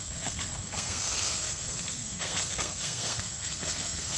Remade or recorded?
remade